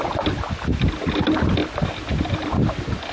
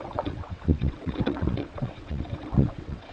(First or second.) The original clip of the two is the first